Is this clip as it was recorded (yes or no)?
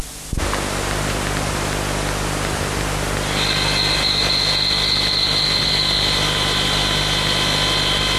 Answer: yes